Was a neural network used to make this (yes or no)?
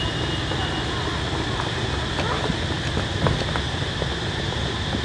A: no